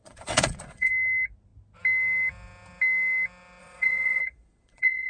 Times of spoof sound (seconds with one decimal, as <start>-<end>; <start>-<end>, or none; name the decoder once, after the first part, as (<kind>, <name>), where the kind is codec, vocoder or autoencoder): 0.0-0.9 (vocoder, Vocos); 3.6-5.1